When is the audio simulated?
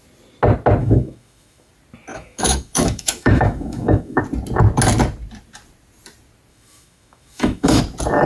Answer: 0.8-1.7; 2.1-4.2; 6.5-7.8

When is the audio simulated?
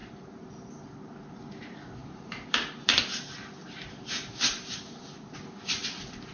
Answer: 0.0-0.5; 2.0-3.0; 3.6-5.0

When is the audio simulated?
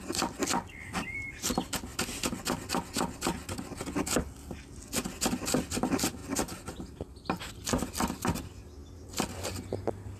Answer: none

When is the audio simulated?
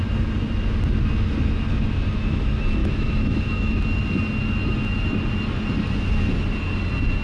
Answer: 2.8-3.8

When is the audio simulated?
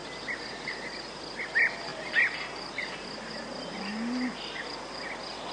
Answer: none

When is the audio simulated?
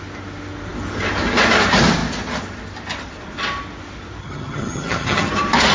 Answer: 4.2-5.3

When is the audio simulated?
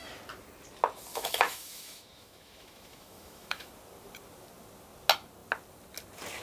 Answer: 1.1-3.7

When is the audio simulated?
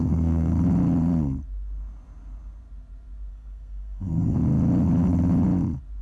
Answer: 0.0-0.5; 3.3-4.4